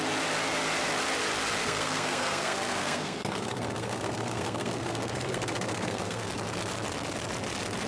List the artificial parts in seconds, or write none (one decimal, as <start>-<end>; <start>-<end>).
1.6-6.3